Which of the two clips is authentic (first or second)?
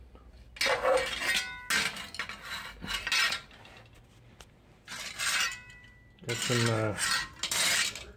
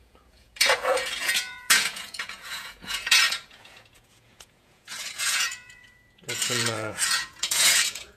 first